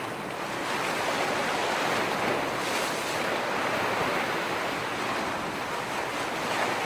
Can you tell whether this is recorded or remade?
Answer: recorded